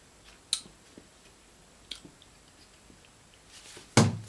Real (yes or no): yes